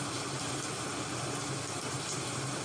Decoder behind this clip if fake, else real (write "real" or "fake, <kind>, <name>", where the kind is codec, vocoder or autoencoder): real